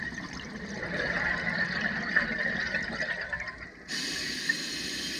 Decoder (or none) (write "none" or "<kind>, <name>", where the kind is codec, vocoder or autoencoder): none